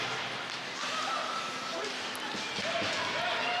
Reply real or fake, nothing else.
real